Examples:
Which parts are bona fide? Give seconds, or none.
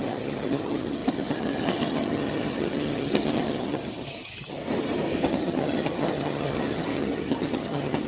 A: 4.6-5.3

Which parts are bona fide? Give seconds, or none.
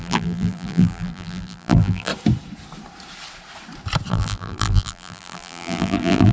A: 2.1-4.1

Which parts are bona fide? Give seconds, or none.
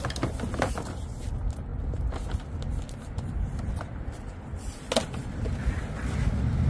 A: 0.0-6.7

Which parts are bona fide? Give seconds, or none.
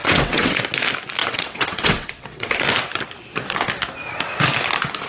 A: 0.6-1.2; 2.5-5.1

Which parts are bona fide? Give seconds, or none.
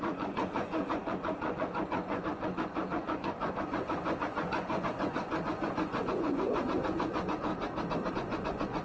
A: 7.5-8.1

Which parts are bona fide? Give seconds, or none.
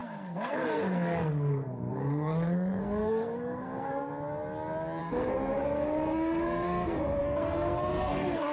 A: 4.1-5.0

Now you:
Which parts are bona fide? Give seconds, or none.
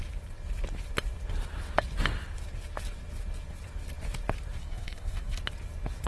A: 0.0-4.6; 5.4-6.1